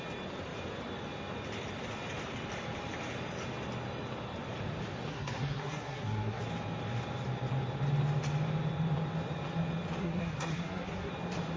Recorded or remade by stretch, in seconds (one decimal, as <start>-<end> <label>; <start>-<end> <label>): 0.0-5.1 recorded; 5.1-6.4 remade; 6.4-10.0 recorded; 10.0-11.1 remade; 11.1-11.6 recorded